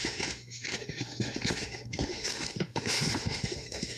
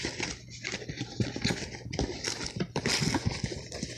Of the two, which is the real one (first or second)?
second